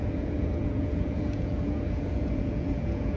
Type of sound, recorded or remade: remade